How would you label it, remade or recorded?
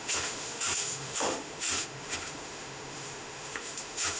remade